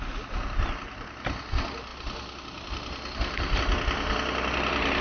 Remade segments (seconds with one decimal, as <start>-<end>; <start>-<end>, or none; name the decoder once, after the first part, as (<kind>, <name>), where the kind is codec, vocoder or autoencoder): none